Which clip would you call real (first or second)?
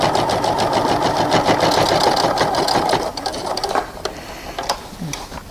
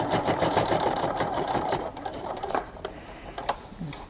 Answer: first